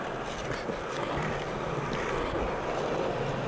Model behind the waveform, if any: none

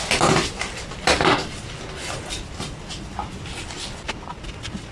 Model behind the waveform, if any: none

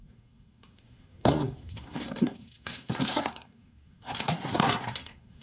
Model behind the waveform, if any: codec, SNAC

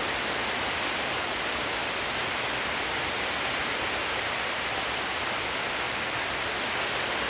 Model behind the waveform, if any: none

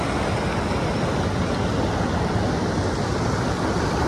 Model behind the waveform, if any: none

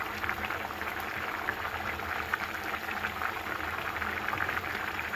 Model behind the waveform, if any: none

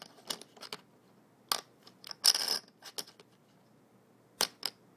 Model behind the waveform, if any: none